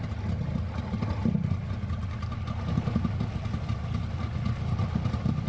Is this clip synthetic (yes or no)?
no